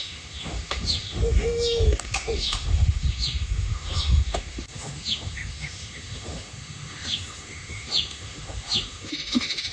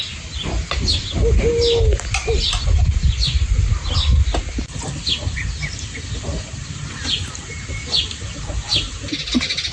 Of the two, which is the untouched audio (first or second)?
second